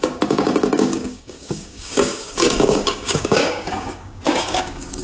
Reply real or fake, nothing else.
fake